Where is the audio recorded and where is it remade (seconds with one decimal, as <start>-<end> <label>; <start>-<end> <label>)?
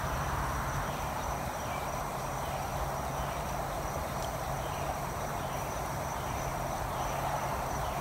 0.0-2.7 remade; 2.7-3.4 recorded; 3.4-8.0 remade